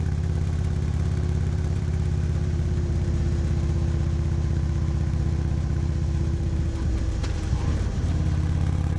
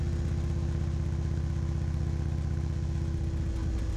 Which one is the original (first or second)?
second